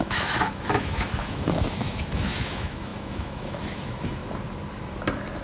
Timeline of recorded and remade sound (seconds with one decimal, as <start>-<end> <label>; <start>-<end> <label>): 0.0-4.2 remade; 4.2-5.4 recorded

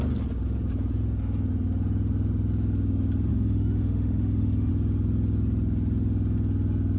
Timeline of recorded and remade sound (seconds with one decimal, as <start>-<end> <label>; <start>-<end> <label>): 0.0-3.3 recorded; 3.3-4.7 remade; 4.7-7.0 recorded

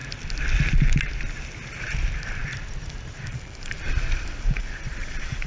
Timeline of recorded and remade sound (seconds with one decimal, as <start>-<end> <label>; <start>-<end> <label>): 0.0-1.8 recorded; 1.8-2.4 remade; 2.4-3.3 recorded; 3.3-5.5 remade

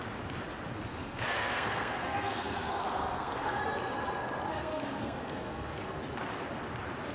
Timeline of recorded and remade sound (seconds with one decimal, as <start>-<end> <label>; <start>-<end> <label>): 0.0-0.9 recorded; 0.9-3.6 remade; 3.6-4.5 recorded; 4.5-6.0 remade; 6.0-7.1 recorded

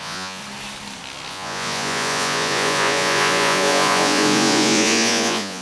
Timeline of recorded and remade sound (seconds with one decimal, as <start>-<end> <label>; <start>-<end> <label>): 0.0-0.4 remade; 0.4-1.3 recorded; 1.3-5.6 remade

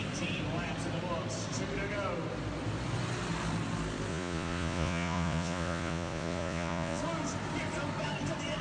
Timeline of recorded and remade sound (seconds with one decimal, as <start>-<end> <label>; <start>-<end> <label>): 0.0-4.1 recorded; 4.1-7.0 remade; 7.0-8.6 recorded

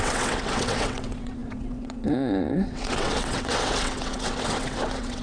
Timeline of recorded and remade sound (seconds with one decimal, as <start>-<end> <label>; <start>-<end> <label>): 0.0-5.2 remade